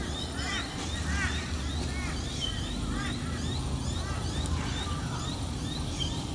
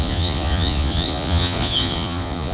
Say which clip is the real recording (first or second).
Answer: first